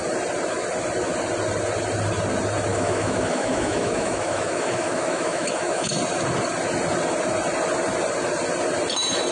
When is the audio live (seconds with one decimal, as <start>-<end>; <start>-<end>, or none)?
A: 0.0-2.7; 5.9-9.3